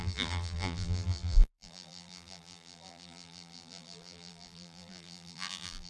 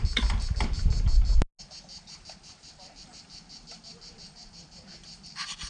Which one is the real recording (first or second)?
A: second